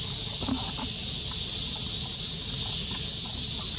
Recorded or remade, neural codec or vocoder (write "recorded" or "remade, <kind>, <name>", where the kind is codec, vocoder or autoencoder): recorded